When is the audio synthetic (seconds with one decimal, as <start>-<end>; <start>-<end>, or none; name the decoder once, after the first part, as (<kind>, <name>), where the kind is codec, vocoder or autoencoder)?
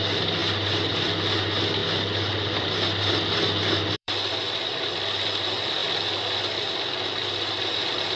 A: 0.0-0.4 (vocoder, BigVGAN v2); 0.9-1.8; 2.7-5.8; 7.5-8.2